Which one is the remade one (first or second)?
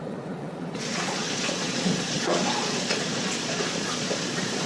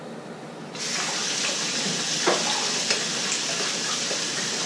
first